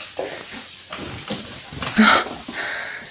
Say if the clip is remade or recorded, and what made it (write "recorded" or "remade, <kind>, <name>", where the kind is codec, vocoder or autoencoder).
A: recorded